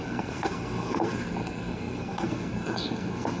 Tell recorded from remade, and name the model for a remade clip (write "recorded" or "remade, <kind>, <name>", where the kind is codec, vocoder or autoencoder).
remade, codec, SNAC